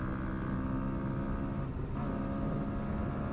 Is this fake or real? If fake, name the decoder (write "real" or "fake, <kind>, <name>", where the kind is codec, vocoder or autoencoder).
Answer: real